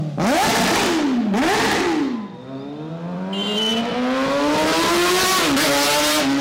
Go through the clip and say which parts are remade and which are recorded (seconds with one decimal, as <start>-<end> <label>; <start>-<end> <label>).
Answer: 0.0-6.4 recorded